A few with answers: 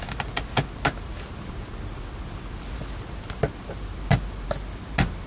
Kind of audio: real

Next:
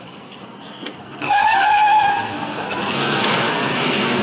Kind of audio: fake